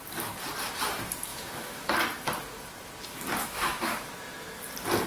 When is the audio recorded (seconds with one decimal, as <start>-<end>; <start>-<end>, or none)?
0.0-1.3; 1.9-3.4; 4.1-5.1